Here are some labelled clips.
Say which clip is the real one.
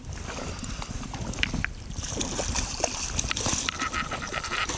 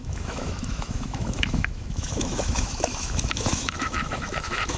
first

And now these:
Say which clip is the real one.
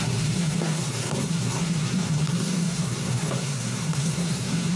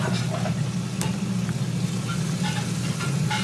second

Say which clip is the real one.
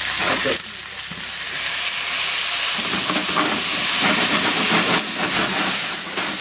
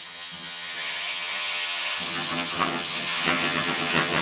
first